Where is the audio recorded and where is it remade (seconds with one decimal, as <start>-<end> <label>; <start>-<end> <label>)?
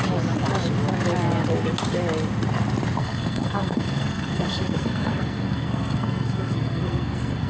0.0-3.0 recorded; 3.0-7.5 remade